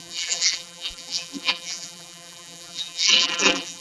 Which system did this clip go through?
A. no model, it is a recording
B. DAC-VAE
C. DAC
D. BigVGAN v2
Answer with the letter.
D